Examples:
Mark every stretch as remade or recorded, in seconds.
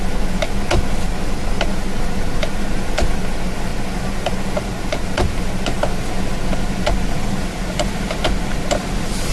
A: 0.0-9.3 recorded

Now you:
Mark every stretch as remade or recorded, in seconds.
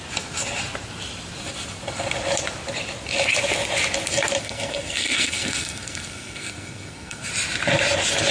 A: 0.0-4.4 recorded; 4.4-7.3 remade; 7.3-8.3 recorded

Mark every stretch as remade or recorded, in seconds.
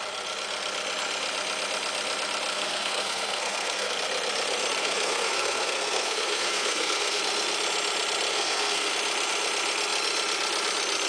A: 0.0-2.5 recorded; 2.5-3.9 remade; 3.9-4.8 recorded; 4.8-7.2 remade; 7.2-8.3 recorded; 8.3-8.9 remade; 8.9-11.1 recorded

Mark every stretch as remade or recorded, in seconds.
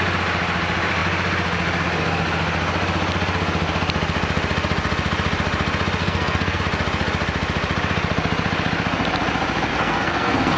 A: 0.0-6.0 recorded; 6.0-6.6 remade; 6.6-9.7 recorded; 9.7-10.6 remade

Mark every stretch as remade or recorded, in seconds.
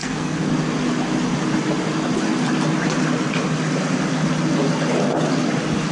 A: 0.0-0.5 remade; 0.5-5.9 recorded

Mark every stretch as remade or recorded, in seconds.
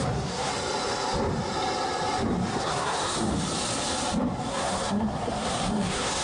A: 0.0-0.5 remade; 0.5-2.6 recorded; 2.6-3.3 remade; 3.3-4.5 recorded; 4.5-6.2 remade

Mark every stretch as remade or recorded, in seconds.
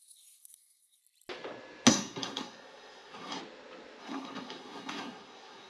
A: 0.0-1.0 remade; 1.0-1.9 recorded; 1.9-3.4 remade; 3.4-4.0 recorded; 4.0-5.7 remade